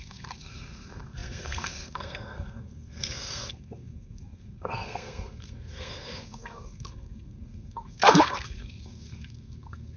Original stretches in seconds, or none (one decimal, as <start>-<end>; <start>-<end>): none